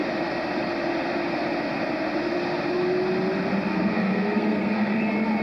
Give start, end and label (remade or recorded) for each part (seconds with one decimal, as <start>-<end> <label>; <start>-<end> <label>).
0.0-3.7 recorded; 3.7-5.0 remade; 5.0-5.4 recorded